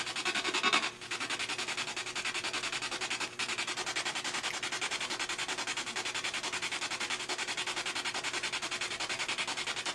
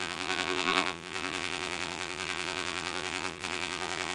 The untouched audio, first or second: first